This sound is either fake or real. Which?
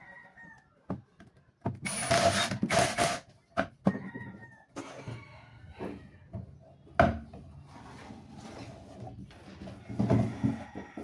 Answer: real